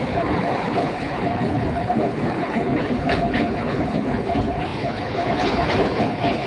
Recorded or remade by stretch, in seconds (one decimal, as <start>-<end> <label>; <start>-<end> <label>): 0.0-6.5 remade